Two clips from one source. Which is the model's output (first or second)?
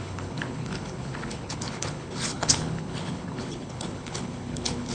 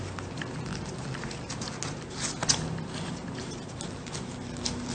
first